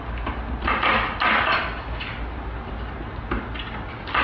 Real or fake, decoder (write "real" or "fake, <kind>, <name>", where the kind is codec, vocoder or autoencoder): real